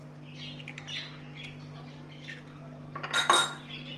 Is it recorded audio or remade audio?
recorded